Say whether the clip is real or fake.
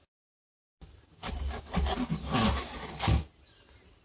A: real